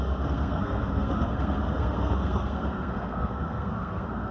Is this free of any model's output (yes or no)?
no